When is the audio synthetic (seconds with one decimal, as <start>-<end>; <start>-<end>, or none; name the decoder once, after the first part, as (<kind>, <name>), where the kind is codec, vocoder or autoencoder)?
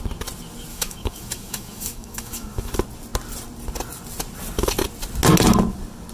0.7-2.7 (autoencoder, DAC-VAE)